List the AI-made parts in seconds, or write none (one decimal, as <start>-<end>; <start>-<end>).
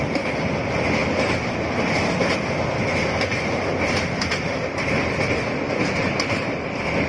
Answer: none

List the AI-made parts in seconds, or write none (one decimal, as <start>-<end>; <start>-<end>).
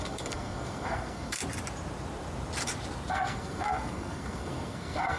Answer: 0.0-1.4; 3.1-5.2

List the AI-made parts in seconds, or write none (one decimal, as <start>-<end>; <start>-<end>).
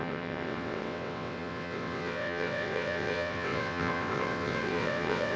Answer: 0.0-5.4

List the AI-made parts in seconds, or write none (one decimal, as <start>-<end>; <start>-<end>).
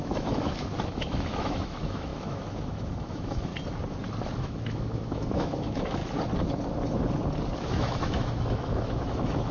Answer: 0.0-3.5; 4.4-6.0; 7.6-9.5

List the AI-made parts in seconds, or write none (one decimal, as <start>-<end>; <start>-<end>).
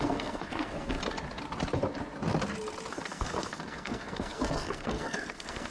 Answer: 0.0-1.0; 2.9-5.7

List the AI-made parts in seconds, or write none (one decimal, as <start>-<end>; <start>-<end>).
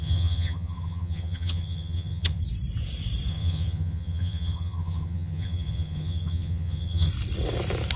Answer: 0.0-2.4; 3.3-7.1